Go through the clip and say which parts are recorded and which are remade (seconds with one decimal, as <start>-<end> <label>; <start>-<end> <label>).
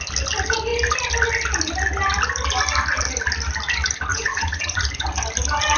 0.0-4.1 recorded; 4.1-4.8 remade; 4.8-5.8 recorded